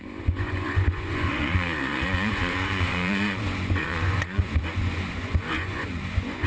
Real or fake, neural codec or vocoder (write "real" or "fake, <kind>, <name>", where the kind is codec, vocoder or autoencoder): fake, vocoder, Vocos